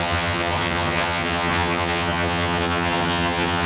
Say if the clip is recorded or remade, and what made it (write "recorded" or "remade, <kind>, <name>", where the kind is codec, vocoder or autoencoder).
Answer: remade, vocoder, HiFi-GAN